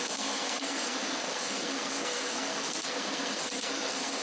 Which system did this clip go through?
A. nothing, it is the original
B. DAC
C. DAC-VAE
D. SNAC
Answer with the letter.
D